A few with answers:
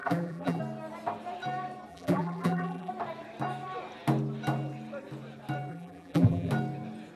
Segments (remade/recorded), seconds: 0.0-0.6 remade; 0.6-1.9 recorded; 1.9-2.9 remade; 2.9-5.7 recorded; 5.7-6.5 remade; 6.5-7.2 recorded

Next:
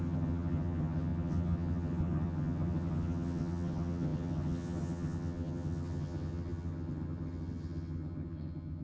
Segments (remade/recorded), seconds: 0.0-8.8 remade

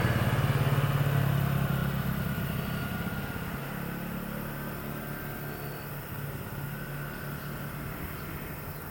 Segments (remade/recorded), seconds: 0.0-8.9 recorded

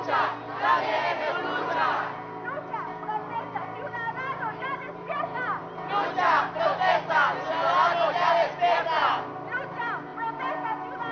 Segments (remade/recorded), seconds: 0.0-3.2 recorded; 3.2-5.6 remade; 5.6-11.1 recorded